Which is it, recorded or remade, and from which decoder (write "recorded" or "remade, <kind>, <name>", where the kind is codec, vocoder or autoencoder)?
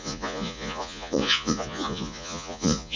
remade, vocoder, Vocos